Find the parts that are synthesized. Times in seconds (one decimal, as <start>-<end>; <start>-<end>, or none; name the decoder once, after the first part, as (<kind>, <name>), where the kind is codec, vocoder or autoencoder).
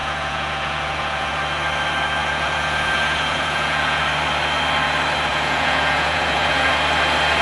0.0-1.3 (vocoder, Vocos); 2.2-4.0; 5.3-6.7